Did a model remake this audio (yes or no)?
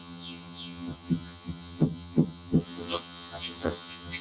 yes